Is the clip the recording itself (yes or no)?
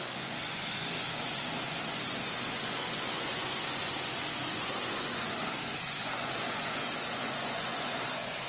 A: no